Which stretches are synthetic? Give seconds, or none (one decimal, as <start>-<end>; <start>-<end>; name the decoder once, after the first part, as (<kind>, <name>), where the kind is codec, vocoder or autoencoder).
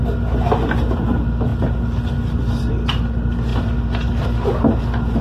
none